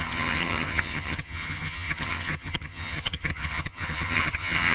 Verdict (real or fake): fake